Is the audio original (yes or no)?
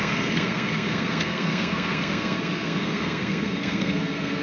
no